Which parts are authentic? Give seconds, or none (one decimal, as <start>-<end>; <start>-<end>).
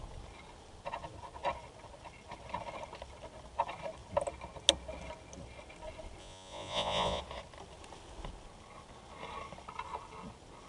0.0-6.2; 7.2-10.7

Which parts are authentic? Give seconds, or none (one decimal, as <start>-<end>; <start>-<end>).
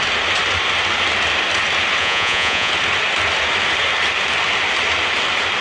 0.0-2.0; 2.7-5.6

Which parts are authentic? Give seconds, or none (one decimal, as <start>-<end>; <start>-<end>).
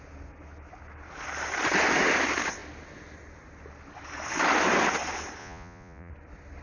0.0-5.4; 6.1-6.6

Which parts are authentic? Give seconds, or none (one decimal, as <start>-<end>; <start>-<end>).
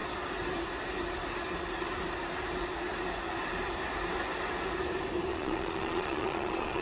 0.0-5.3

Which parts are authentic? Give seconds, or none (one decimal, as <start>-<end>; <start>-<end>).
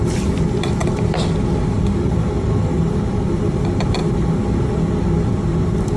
0.0-6.0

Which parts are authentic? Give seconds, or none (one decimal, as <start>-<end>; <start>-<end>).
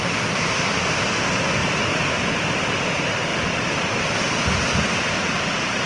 0.0-5.9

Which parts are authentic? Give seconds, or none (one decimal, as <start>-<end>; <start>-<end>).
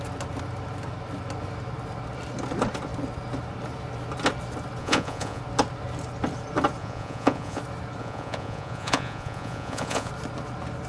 0.0-4.8; 5.4-6.8; 7.6-8.0; 10.1-10.9